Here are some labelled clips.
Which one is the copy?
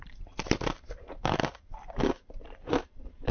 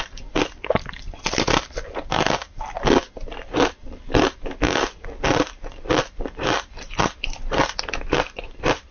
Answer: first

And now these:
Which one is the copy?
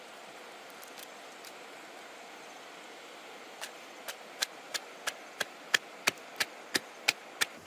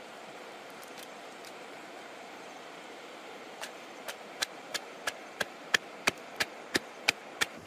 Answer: second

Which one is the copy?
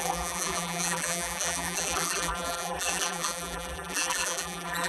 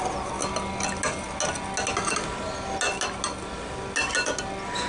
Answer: first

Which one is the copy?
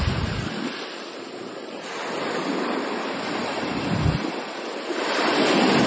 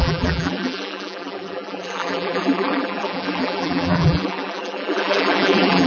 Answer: second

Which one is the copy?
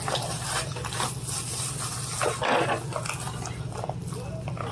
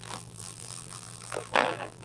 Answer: second